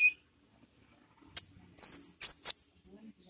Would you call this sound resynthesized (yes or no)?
no